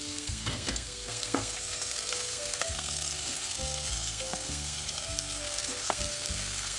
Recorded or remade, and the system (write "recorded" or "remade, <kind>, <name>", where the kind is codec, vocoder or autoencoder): remade, codec, SNAC